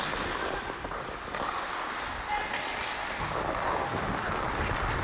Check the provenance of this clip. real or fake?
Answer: real